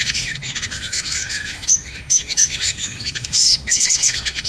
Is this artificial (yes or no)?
yes